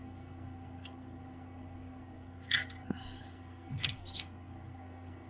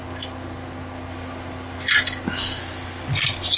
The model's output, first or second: first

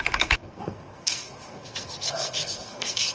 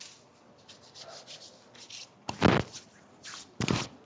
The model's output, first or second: first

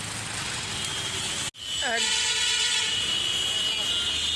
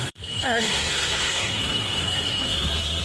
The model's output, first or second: second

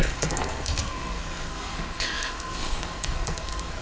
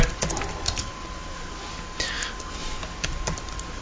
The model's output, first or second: first